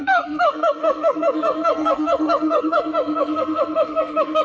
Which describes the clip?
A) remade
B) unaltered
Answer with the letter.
A